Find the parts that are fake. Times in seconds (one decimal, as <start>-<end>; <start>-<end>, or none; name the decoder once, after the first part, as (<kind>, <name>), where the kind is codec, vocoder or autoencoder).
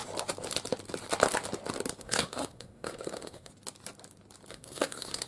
2.0-3.5 (codec, SNAC); 4.5-5.3